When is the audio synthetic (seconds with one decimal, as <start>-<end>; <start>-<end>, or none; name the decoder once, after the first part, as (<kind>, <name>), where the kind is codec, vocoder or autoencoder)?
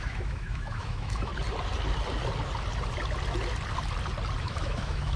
0.0-1.3 (autoencoder, DAC-VAE); 4.4-5.2